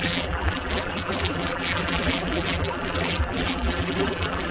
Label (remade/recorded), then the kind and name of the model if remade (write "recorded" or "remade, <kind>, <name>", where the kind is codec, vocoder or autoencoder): remade, vocoder, BigVGAN v2